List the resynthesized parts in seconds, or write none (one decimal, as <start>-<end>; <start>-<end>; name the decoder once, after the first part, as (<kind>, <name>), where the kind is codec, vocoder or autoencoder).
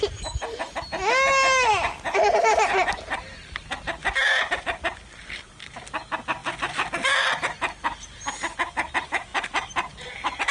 4.0-5.5 (vocoder, BigVGAN v2)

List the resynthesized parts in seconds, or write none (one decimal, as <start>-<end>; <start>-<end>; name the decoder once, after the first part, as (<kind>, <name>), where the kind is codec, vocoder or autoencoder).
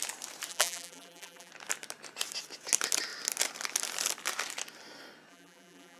0.5-1.5 (vocoder, BigVGAN v2); 5.3-6.0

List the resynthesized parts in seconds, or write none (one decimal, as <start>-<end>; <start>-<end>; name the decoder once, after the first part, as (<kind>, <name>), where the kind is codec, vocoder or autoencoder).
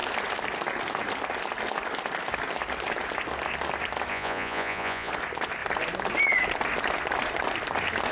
4.1-5.1 (vocoder, Vocos)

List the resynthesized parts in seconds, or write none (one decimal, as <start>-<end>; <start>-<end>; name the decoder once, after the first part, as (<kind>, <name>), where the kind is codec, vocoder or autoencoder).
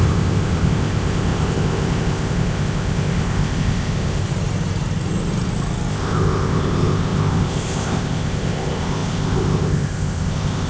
0.0-4.2 (codec, ZipCodec); 5.9-10.7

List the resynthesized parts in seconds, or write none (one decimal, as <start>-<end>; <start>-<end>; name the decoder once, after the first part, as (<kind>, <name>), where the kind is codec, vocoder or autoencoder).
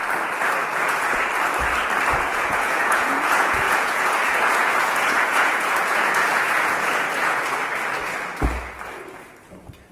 0.6-1.2 (vocoder, Vocos); 2.3-7.4